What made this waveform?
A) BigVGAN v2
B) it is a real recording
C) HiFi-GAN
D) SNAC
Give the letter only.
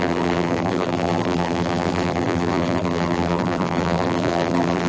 A